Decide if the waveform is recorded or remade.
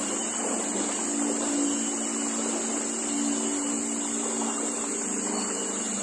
recorded